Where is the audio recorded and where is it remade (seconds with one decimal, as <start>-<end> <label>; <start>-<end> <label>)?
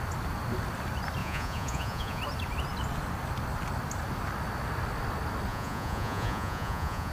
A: 0.0-1.2 recorded; 1.2-2.2 remade; 2.2-5.5 recorded; 5.5-7.1 remade